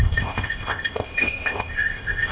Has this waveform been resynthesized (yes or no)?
yes